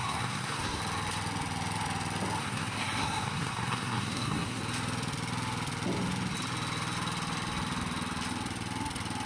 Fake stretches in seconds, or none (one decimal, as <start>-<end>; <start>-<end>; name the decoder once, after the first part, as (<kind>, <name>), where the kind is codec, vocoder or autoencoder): 0.0-0.8 (codec, SNAC); 2.4-4.6